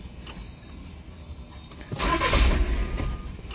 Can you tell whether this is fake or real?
real